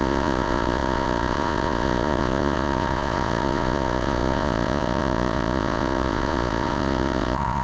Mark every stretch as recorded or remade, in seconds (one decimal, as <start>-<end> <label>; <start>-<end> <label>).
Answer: 0.0-7.6 remade